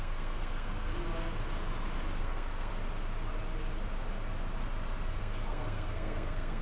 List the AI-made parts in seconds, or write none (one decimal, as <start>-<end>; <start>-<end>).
0.0-0.9; 2.2-2.7; 5.2-6.6